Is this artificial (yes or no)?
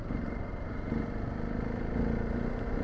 no